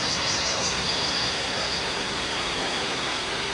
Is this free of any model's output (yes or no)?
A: no